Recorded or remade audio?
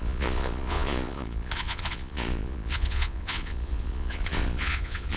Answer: remade